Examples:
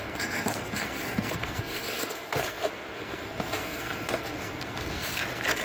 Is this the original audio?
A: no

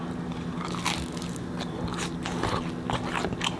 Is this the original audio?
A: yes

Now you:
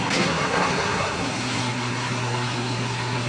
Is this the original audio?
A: no